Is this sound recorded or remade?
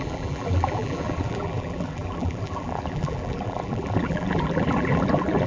remade